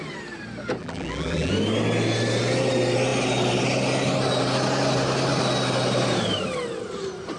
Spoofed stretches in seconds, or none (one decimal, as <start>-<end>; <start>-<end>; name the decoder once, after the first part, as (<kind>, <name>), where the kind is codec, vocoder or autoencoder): 0.8-1.5 (vocoder, BigVGAN v2)